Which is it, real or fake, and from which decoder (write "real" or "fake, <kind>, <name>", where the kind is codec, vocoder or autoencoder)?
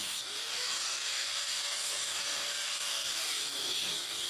fake, codec, DAC